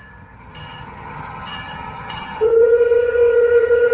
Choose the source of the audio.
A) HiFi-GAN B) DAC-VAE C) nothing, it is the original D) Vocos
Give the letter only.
A